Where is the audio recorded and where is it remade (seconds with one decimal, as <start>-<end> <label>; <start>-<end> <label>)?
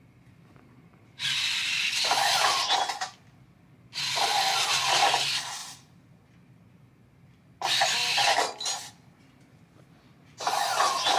0.0-11.2 recorded